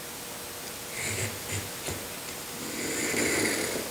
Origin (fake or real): real